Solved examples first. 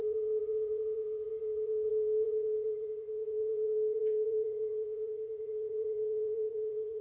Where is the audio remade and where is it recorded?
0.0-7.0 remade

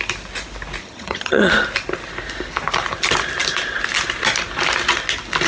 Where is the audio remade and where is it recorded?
0.0-0.8 recorded; 0.8-1.5 remade; 1.5-5.5 recorded

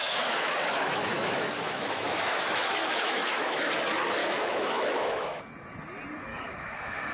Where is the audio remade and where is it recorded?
0.0-3.7 remade; 3.7-4.2 recorded; 4.2-5.4 remade; 5.4-6.3 recorded; 6.3-7.1 remade

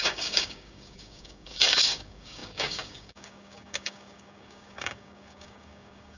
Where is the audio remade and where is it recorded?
0.0-6.2 remade

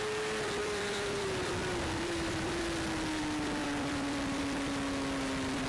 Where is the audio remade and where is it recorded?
0.0-0.6 recorded; 0.6-2.6 remade; 2.6-3.6 recorded; 3.6-4.4 remade; 4.4-5.7 recorded

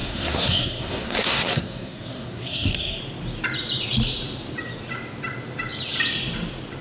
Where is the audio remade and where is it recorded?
0.0-3.0 remade; 3.0-6.8 recorded

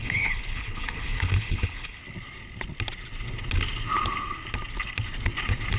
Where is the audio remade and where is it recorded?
0.0-2.0 remade; 2.0-5.8 recorded

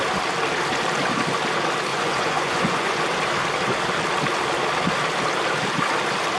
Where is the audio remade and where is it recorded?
0.0-1.9 recorded; 1.9-3.0 remade; 3.0-6.4 recorded